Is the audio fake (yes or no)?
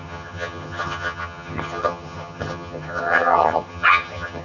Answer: yes